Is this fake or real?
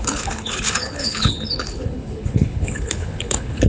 fake